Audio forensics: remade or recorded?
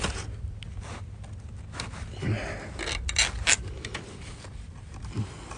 recorded